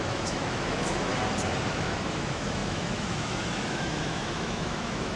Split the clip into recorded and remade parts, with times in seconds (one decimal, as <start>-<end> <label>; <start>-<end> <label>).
0.0-1.1 remade; 1.1-1.7 recorded; 1.7-5.2 remade